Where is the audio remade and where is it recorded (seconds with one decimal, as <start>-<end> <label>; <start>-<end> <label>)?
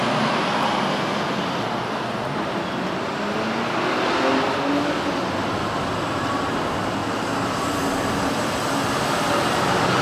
0.0-10.0 recorded